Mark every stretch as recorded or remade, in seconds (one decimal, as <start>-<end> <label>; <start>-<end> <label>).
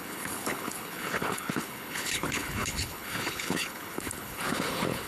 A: 0.0-5.1 remade